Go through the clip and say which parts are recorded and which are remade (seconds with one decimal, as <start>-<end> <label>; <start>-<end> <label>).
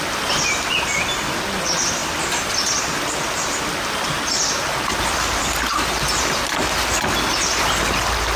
0.0-8.4 recorded